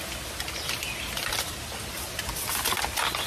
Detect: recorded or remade remade